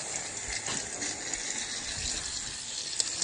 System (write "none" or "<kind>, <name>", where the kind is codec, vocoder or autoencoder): none